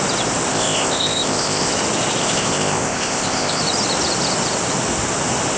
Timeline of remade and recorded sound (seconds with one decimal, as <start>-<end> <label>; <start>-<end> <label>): 0.0-0.5 recorded; 0.5-1.7 remade; 1.7-2.2 recorded; 2.2-3.6 remade; 3.6-5.6 recorded